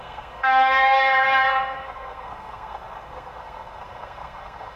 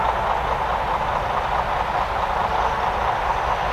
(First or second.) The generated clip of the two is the first